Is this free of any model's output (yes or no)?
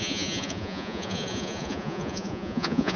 no